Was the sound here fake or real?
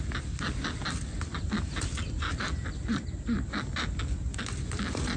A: real